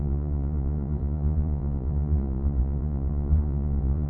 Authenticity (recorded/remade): remade